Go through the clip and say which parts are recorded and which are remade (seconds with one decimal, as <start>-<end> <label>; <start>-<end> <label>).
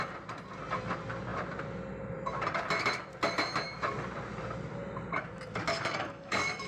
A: 0.0-5.7 recorded; 5.7-6.7 remade